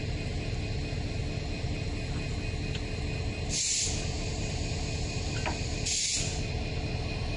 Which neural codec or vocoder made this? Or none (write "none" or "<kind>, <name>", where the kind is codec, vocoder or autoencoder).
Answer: none